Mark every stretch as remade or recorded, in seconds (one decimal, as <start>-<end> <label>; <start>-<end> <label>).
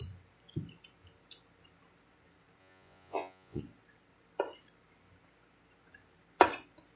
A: 0.0-2.6 recorded; 2.6-3.6 remade; 3.6-7.0 recorded